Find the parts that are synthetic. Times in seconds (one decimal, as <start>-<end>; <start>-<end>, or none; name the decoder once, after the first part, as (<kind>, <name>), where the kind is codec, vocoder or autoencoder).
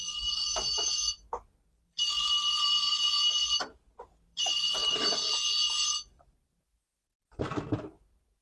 0.0-3.1 (vocoder, BigVGAN v2); 4.0-8.4